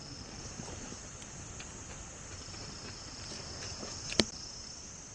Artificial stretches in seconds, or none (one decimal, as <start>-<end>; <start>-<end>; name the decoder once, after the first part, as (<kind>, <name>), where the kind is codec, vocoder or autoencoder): none